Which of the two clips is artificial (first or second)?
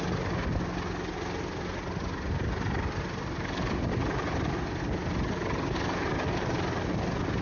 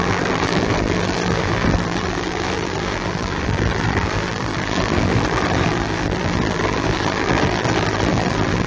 second